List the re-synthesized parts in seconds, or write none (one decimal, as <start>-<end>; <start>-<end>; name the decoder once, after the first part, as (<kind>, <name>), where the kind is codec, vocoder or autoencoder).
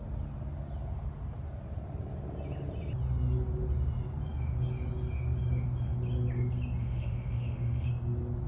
6.8-7.9 (autoencoder, DAC-VAE)